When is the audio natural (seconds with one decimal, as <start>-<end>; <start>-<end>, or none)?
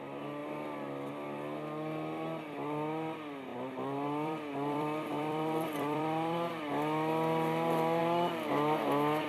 0.0-0.4; 1.1-3.5; 6.6-8.0; 8.5-9.3